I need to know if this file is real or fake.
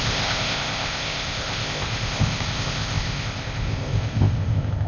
fake